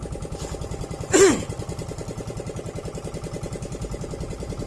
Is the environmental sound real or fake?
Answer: real